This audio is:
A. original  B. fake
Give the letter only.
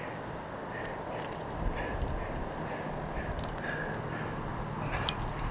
A